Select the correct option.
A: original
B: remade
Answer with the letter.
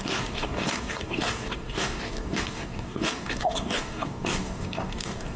B